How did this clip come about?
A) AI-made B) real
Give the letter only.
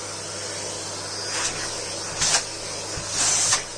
B